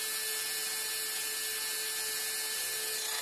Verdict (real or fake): real